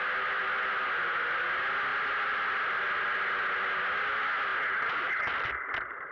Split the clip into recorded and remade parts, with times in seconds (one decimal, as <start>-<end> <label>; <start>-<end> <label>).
0.0-1.9 recorded; 1.9-3.2 remade; 3.2-6.1 recorded